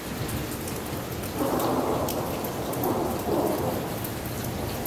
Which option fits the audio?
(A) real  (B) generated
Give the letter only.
A